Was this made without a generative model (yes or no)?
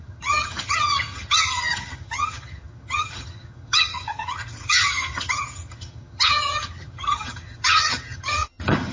no